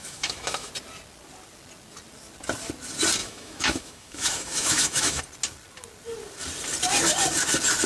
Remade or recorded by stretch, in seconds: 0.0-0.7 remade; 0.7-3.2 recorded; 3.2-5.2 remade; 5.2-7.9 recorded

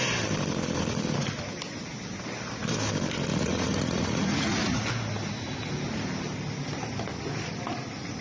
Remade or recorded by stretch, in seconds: 0.0-3.3 recorded; 3.3-4.9 remade; 4.9-8.2 recorded

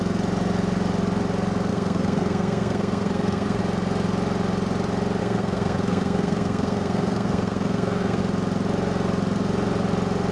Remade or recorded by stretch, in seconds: 0.0-1.7 recorded; 1.7-3.6 remade; 3.6-5.2 recorded; 5.2-8.2 remade; 8.2-10.3 recorded

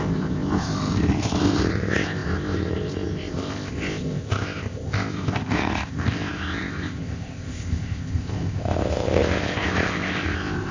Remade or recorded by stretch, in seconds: 0.0-10.7 remade

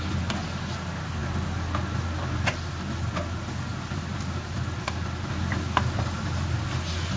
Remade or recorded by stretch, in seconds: 0.0-7.2 recorded

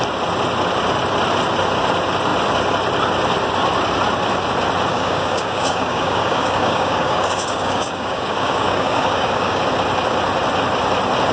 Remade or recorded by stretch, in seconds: 0.0-4.9 recorded; 4.9-9.6 remade; 9.6-11.3 recorded

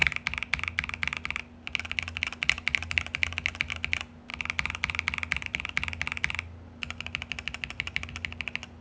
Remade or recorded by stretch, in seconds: 0.0-8.8 recorded

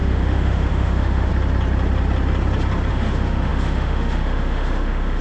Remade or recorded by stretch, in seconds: 0.0-1.3 remade; 1.3-2.9 recorded; 2.9-5.2 remade